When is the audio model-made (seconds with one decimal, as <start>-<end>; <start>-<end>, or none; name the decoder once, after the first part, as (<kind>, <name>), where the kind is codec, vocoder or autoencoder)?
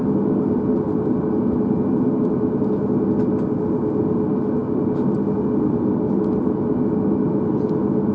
none